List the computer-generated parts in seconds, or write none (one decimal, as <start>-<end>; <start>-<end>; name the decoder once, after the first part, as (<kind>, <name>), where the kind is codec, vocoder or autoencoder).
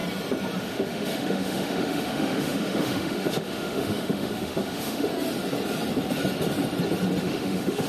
0.6-5.1 (autoencoder, DAC-VAE); 7.2-7.9